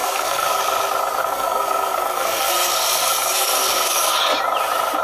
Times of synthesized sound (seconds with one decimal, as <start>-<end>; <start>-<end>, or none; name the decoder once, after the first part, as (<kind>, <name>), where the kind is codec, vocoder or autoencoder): 0.0-0.6 (codec, SNAC); 1.2-4.2